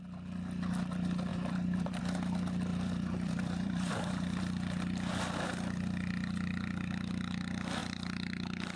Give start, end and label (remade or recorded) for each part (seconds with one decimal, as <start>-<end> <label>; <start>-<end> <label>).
0.0-1.3 recorded; 1.3-2.0 remade; 2.0-2.7 recorded; 2.7-4.4 remade; 4.4-8.8 recorded